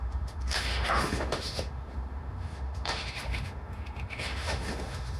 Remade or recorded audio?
remade